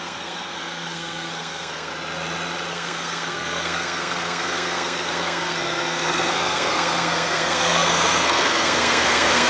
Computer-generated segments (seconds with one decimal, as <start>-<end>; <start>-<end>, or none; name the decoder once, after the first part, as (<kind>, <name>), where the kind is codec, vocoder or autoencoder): 0.0-1.9 (codec, SNAC); 2.7-9.5